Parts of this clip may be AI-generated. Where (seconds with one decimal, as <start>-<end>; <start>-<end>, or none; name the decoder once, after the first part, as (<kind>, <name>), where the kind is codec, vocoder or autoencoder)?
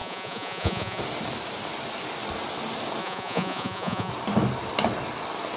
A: 0.0-1.0 (vocoder, Vocos); 3.0-4.1